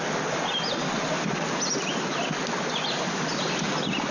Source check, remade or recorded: recorded